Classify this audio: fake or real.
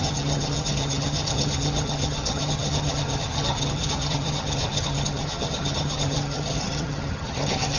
fake